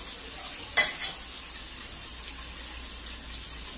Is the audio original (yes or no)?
yes